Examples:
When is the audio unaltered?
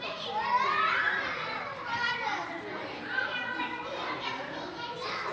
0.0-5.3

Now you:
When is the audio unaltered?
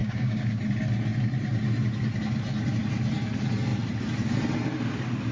0.6-5.3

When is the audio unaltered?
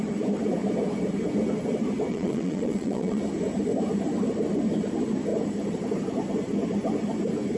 0.0-2.1; 3.2-7.6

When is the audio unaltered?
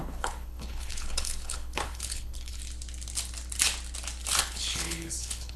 2.6-4.4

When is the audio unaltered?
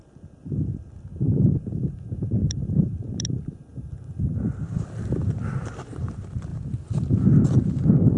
3.7-4.3; 6.5-7.5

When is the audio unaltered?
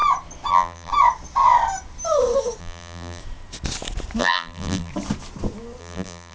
0.0-0.5; 0.9-2.6; 3.2-4.2; 4.9-5.8